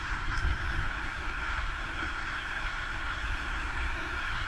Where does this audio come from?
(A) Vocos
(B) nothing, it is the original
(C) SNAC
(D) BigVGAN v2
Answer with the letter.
C